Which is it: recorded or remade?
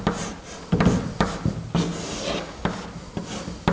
recorded